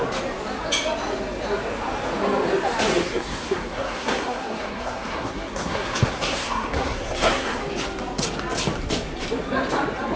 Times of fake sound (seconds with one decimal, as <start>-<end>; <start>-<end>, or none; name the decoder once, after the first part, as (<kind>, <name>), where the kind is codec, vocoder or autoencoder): 3.0-7.6 (codec, SNAC)